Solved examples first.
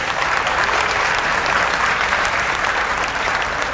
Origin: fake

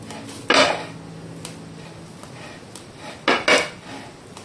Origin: real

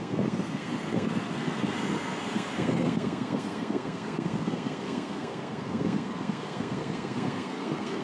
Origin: fake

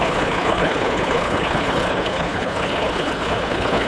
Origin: fake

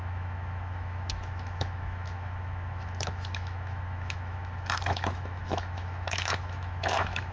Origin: fake